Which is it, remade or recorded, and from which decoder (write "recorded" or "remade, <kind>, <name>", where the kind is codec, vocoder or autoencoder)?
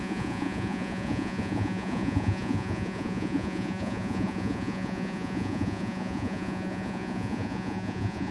remade, vocoder, Vocos